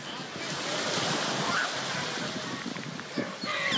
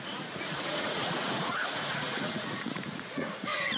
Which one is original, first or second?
first